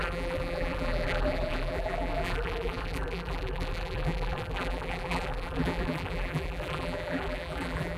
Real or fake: fake